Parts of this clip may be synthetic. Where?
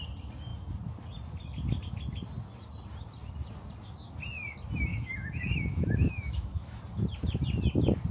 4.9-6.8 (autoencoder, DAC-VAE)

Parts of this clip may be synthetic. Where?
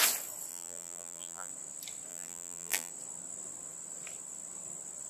0.5-1.5 (vocoder, BigVGAN v2); 2.1-2.9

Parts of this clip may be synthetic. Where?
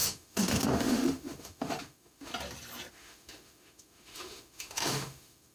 0.0-2.3 (autoencoder, DAC-VAE); 2.9-5.5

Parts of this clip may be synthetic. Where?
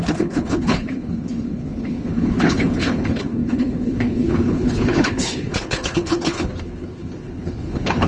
0.0-8.1 (codec, HILCodec)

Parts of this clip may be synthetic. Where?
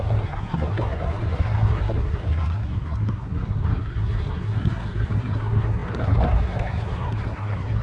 0.0-7.8 (codec, SNAC)